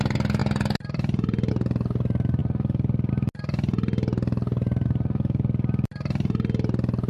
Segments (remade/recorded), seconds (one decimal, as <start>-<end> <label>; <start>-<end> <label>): 0.0-0.4 recorded; 0.4-1.5 remade; 1.5-7.1 recorded